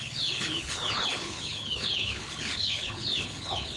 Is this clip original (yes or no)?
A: no